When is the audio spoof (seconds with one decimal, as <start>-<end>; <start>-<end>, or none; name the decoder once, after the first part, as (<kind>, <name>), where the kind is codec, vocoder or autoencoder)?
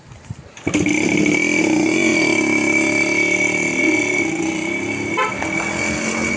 none